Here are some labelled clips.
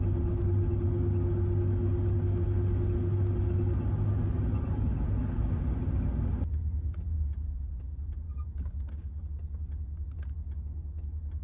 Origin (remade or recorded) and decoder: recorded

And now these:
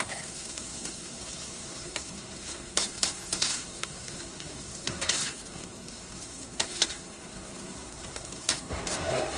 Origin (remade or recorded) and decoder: remade, codec, SNAC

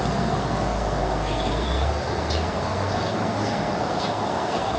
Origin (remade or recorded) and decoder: remade, codec, SNAC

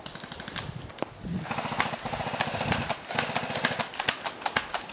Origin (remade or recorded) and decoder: recorded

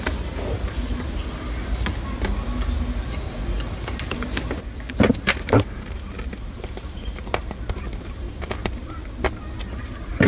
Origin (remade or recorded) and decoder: recorded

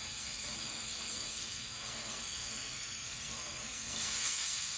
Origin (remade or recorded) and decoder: remade, codec, SNAC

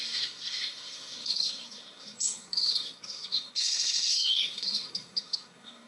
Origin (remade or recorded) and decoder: remade, codec, SNAC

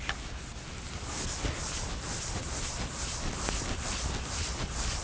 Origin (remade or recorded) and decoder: recorded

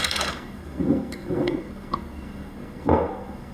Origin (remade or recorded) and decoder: remade, codec, SNAC